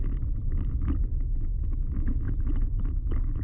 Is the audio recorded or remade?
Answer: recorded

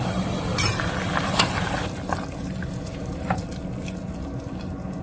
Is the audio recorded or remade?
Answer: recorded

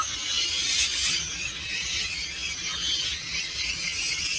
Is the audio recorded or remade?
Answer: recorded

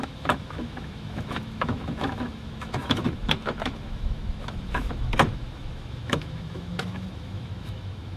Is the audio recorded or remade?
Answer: remade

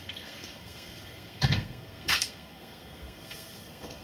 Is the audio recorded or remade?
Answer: remade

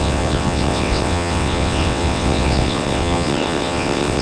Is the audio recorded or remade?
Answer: remade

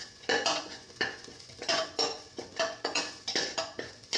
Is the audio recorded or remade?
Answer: remade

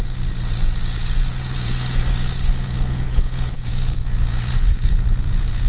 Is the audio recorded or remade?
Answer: remade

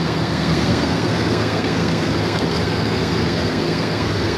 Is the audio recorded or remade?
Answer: remade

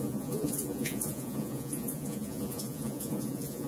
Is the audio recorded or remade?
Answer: remade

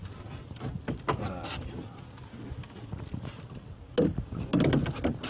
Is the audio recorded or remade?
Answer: recorded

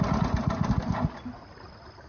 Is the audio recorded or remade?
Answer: recorded